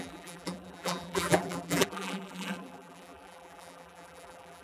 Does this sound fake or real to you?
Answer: fake